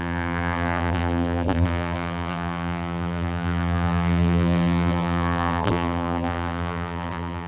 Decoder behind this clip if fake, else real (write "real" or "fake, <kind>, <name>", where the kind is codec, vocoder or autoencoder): fake, vocoder, BigVGAN v2